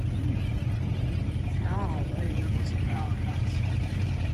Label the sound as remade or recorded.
remade